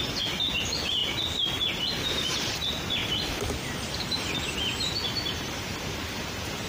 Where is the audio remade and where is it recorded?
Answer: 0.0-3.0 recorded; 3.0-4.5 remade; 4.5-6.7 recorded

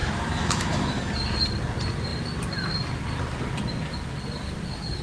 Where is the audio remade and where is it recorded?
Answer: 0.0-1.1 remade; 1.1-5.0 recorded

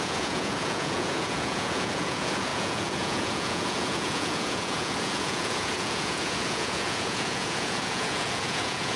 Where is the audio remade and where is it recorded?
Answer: 0.0-9.0 remade